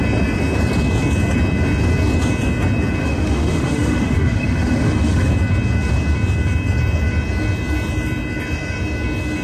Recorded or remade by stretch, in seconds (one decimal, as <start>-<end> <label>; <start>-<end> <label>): 0.0-3.0 recorded; 3.0-5.3 remade; 5.3-9.4 recorded